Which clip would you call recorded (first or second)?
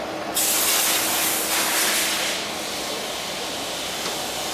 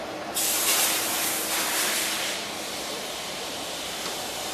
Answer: first